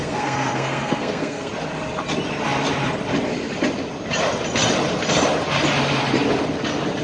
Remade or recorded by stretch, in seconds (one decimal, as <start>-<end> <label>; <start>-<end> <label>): 0.0-1.5 remade; 1.5-7.0 recorded

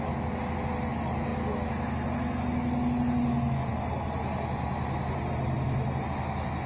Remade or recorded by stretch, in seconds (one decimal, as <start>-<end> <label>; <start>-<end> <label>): 0.0-6.7 recorded

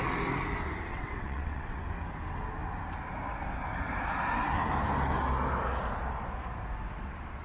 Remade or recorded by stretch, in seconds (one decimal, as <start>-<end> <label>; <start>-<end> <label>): 0.0-0.9 recorded; 0.9-1.8 remade; 1.8-7.4 recorded

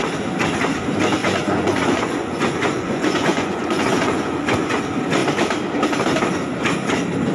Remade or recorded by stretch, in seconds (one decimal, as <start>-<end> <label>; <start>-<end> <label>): 0.0-1.2 recorded; 1.2-4.8 remade; 4.8-7.3 recorded

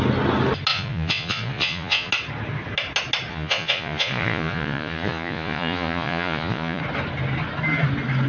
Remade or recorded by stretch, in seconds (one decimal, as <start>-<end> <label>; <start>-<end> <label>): 0.0-0.7 recorded; 0.7-2.1 remade; 2.1-3.3 recorded; 3.3-6.8 remade; 6.8-8.3 recorded

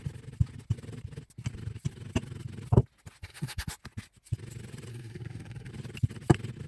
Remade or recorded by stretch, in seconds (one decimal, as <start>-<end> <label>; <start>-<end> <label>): 0.0-3.2 recorded; 3.2-3.7 remade; 3.7-4.9 recorded; 4.9-5.7 remade; 5.7-6.7 recorded

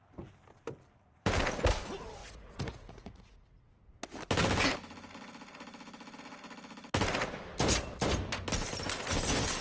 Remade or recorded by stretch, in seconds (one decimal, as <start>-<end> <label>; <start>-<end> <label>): 0.0-2.2 recorded; 2.2-3.7 remade; 3.7-9.6 recorded